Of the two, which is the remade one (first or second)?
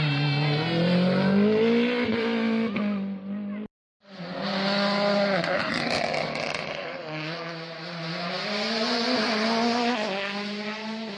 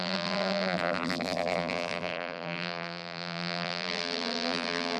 second